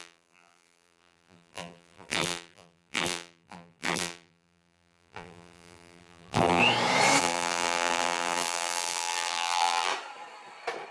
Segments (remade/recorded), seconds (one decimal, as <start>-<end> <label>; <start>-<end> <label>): 0.0-6.6 remade; 6.6-7.2 recorded; 7.2-9.9 remade; 9.9-10.9 recorded